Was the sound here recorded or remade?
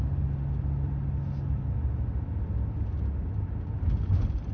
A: recorded